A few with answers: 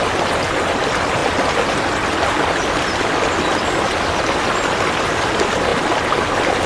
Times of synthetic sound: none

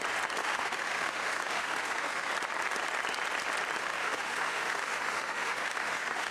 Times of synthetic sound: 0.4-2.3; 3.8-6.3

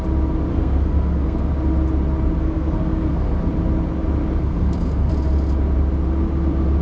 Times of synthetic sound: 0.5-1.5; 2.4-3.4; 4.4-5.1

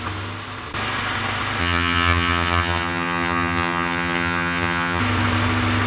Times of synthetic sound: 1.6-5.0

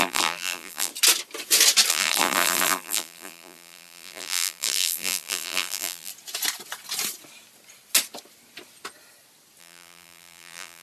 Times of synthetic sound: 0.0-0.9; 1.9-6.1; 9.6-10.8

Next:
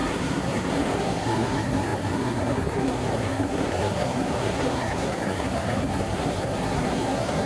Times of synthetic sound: 0.0-7.5

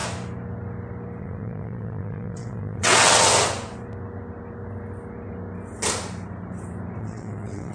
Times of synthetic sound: 1.2-3.3; 7.0-7.7